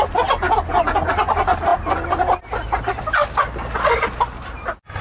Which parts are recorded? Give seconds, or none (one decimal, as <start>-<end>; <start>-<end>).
0.0-5.0